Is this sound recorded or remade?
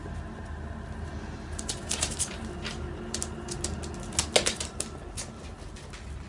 recorded